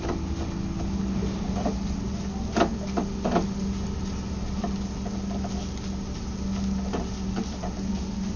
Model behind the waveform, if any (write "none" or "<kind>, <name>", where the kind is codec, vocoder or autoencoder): none